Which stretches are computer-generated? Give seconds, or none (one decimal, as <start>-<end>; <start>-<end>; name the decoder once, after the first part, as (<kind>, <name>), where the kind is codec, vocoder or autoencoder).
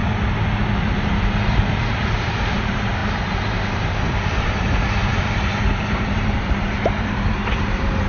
0.8-8.1 (vocoder, BigVGAN v2)